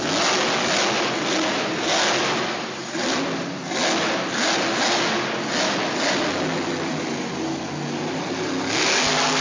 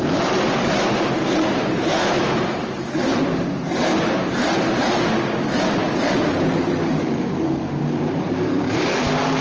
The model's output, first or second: second